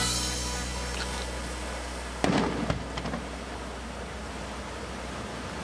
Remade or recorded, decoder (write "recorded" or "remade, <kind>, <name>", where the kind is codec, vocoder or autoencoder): recorded